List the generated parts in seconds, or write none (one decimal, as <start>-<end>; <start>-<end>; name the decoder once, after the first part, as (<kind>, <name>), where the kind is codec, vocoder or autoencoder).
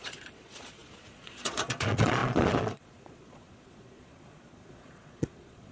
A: 0.0-5.7 (vocoder, Vocos)